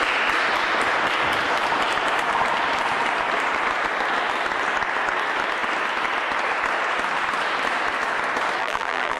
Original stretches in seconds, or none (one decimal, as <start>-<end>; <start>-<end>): 0.0-8.6